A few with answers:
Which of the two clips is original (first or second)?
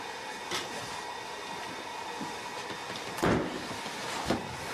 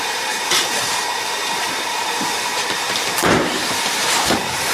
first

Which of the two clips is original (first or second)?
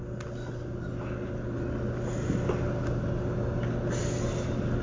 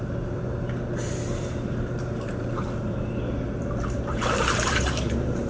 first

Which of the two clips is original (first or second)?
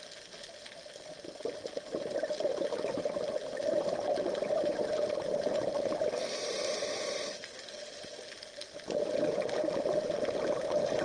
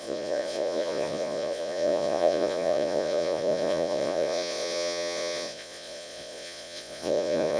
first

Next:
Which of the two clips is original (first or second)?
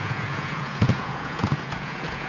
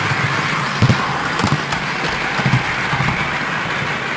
second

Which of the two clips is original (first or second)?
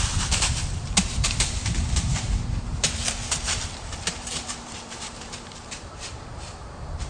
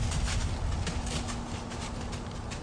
second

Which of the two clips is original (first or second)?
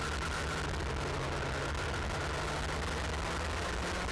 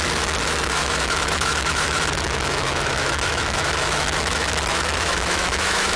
first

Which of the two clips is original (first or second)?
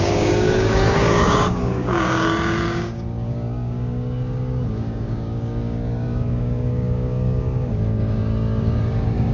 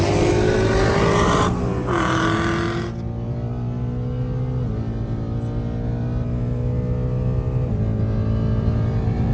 second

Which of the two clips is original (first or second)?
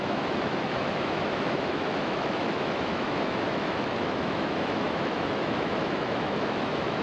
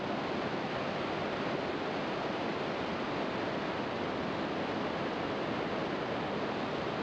second